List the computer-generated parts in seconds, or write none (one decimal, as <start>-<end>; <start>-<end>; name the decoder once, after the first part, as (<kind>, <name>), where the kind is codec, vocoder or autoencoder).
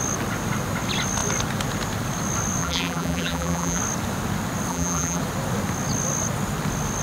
2.6-3.8 (vocoder, BigVGAN v2); 4.7-5.2